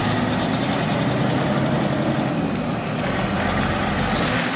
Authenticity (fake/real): real